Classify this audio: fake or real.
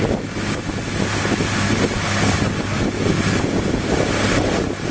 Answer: real